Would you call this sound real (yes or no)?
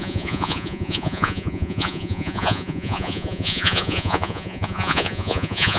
no